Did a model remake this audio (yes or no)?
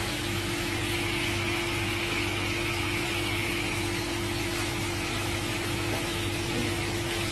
yes